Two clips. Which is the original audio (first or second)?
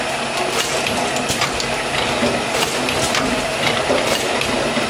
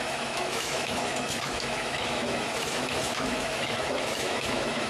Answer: first